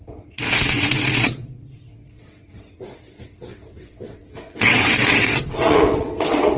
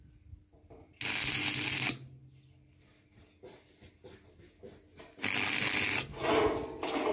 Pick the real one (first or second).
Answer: second